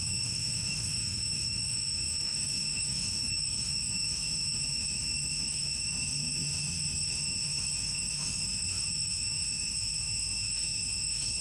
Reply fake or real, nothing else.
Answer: fake